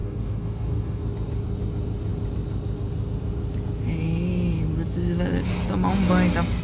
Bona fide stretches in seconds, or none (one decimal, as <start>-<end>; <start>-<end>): 1.0-6.6